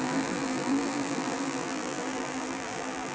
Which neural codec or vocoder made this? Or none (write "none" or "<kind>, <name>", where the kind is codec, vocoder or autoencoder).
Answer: vocoder, BigVGAN v2